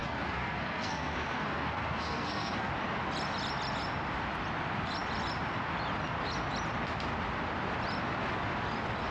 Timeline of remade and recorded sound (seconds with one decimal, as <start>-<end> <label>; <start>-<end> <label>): 0.0-2.7 remade; 2.7-9.1 recorded

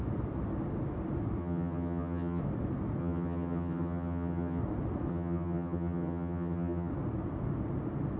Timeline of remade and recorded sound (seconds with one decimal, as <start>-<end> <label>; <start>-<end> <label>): 0.0-1.4 recorded; 1.4-2.4 remade; 2.4-3.0 recorded; 3.0-4.6 remade; 4.6-5.1 recorded; 5.1-6.9 remade; 6.9-8.2 recorded

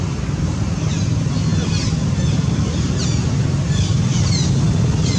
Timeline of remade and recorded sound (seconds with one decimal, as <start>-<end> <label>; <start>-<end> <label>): 0.0-5.2 recorded

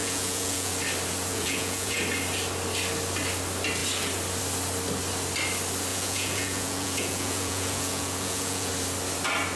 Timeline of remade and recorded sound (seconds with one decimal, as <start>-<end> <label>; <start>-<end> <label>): 0.0-0.7 remade; 0.7-1.3 recorded; 1.3-2.0 remade; 2.0-5.9 recorded; 5.9-8.7 remade; 8.7-9.6 recorded

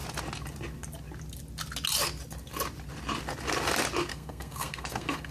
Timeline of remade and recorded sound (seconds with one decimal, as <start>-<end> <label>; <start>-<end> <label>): 0.0-4.1 recorded; 4.1-5.3 remade

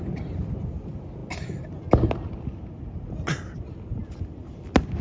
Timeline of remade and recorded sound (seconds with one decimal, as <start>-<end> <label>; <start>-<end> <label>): 0.0-5.0 recorded

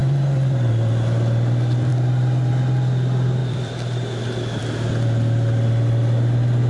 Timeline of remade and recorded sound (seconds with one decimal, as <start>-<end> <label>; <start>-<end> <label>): 0.0-0.7 remade; 0.7-3.4 recorded; 3.4-4.6 remade; 4.6-6.7 recorded

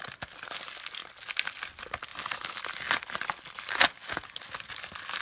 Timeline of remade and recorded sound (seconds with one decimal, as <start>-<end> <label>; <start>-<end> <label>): 0.0-5.2 recorded